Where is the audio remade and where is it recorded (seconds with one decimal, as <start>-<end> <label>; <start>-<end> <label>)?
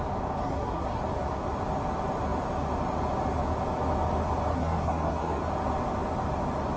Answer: 0.0-0.4 recorded; 0.4-1.0 remade; 1.0-4.5 recorded; 4.5-5.4 remade; 5.4-6.8 recorded